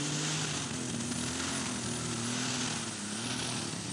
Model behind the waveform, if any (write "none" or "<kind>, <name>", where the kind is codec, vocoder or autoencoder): none